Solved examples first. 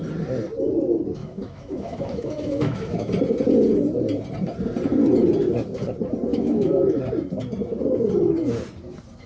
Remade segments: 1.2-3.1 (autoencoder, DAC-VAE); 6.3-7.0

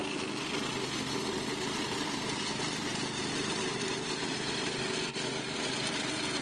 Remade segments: none

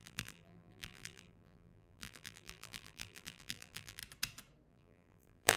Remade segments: 0.0-4.0 (vocoder, BigVGAN v2); 4.7-5.6

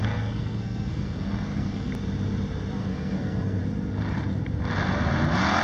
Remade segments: 0.0-1.9 (codec, SNAC); 2.8-3.6

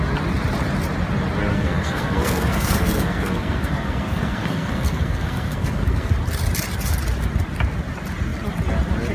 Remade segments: 1.5-6.1 (codec, SNAC)